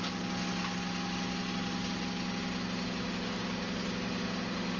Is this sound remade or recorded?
recorded